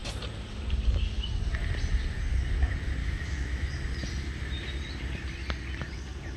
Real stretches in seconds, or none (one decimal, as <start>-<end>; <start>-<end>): 0.0-3.0; 3.7-6.4